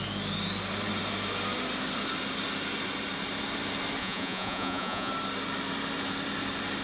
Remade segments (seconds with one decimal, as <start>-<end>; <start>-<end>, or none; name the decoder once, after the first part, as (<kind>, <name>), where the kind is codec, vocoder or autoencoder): 4.0-5.1 (vocoder, Vocos)